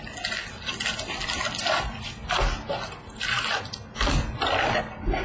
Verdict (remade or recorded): recorded